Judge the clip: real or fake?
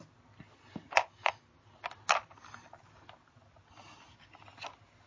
real